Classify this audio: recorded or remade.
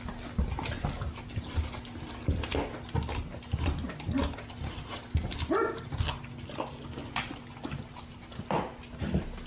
recorded